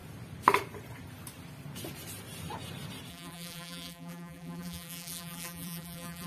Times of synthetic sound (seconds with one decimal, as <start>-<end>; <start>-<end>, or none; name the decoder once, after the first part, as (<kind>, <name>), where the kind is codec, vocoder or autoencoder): 3.1-6.3 (vocoder, BigVGAN v2)